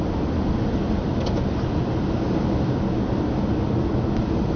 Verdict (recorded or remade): recorded